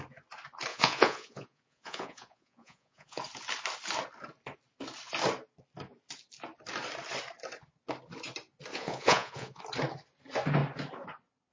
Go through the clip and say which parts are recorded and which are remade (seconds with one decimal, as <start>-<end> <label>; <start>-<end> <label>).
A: 0.0-0.7 recorded; 0.7-3.2 remade; 3.2-8.7 recorded; 8.7-9.6 remade; 9.6-11.5 recorded